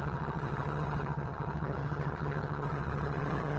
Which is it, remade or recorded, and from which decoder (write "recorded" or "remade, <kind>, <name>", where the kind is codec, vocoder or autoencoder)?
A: remade, vocoder, HiFi-GAN